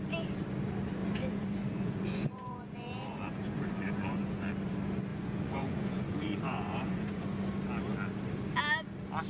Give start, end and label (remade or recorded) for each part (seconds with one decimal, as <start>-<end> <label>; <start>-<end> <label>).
0.0-1.0 recorded; 1.0-4.5 remade; 4.5-5.1 recorded; 5.1-7.3 remade; 7.3-9.3 recorded